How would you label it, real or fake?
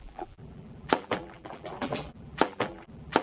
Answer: fake